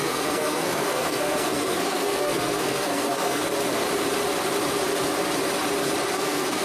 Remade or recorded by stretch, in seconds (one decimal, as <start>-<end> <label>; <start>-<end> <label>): 0.0-3.5 remade; 3.5-6.1 recorded; 6.1-6.6 remade